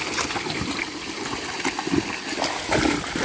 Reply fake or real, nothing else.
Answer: real